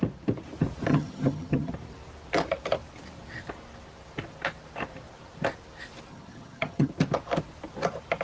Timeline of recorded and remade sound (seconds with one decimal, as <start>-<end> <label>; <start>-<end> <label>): 0.0-0.9 recorded; 0.9-1.7 remade; 1.7-6.1 recorded; 6.1-6.9 remade; 6.9-8.2 recorded